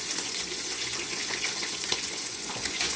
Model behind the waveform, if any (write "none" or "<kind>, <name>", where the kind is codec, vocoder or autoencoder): vocoder, Vocos